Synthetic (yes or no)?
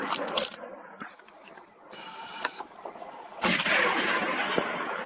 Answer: yes